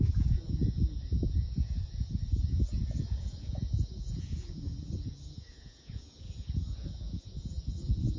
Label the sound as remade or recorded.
remade